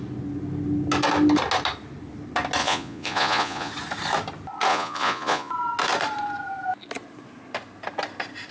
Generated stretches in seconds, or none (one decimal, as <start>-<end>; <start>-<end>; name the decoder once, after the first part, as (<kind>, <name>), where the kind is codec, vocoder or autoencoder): 2.6-3.7 (vocoder, Vocos); 4.7-5.5